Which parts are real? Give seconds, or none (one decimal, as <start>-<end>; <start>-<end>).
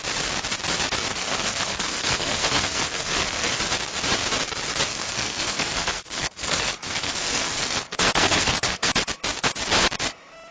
0.0-1.1; 3.6-4.9; 8.9-10.5